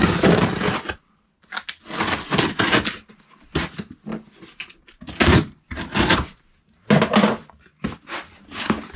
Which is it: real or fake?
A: real